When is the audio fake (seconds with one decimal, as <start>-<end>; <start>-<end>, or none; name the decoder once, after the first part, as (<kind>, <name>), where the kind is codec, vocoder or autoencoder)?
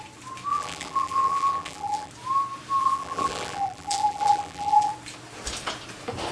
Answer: 0.5-2.1 (vocoder, BigVGAN v2); 2.8-4.9